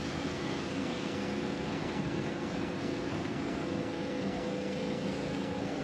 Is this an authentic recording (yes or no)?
no